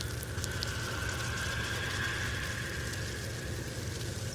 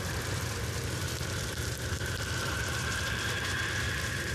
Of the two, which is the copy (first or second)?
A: second